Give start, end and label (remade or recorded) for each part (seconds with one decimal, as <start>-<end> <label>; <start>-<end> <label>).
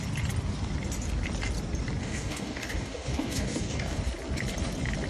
0.0-2.0 recorded; 2.0-4.0 remade; 4.0-5.1 recorded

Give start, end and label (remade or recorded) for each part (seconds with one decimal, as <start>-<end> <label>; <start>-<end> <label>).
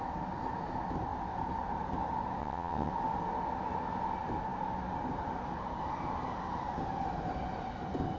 0.0-2.4 recorded; 2.4-2.9 remade; 2.9-8.2 recorded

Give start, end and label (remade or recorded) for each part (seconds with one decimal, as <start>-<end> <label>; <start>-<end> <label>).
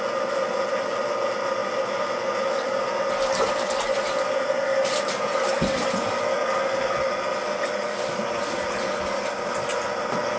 0.0-10.4 recorded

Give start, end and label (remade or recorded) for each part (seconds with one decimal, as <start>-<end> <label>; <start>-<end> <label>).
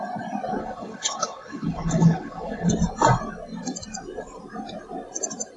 0.0-0.6 recorded; 0.6-2.7 remade; 2.7-5.6 recorded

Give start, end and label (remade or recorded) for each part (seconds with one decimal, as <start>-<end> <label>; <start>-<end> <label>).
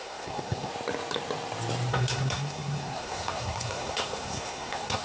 0.0-0.7 remade; 0.7-1.9 recorded; 1.9-5.0 remade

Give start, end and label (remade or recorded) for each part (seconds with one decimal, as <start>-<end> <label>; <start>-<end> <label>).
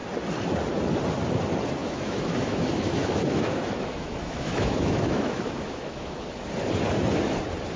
0.0-1.8 recorded; 1.8-6.5 remade; 6.5-7.8 recorded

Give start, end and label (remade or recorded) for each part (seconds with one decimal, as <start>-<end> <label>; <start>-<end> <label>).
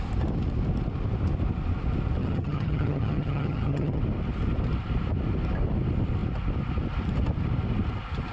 0.0-2.2 recorded; 2.2-4.0 remade; 4.0-8.3 recorded